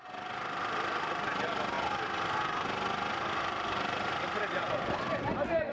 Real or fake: real